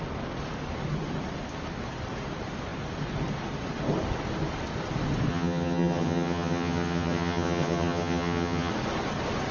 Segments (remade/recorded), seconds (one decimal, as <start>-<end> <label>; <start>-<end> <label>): 0.0-5.3 recorded; 5.3-8.7 remade; 8.7-9.5 recorded